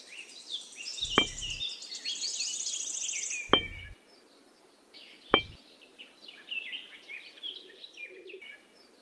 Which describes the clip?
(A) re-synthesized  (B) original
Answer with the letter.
B